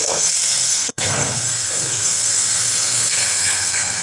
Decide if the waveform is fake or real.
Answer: fake